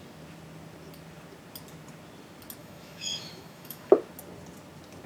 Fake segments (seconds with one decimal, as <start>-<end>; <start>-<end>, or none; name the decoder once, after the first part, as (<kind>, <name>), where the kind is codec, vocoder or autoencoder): 2.6-3.9 (autoencoder, DAC-VAE)